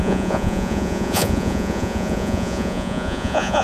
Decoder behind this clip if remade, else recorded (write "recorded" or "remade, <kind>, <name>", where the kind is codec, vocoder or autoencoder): remade, vocoder, Vocos